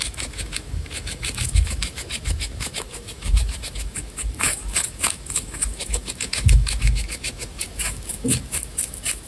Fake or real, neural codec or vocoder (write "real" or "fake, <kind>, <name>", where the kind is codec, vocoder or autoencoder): fake, autoencoder, DAC-VAE